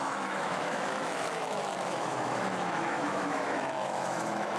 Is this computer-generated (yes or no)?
yes